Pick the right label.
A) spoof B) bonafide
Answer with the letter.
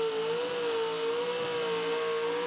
B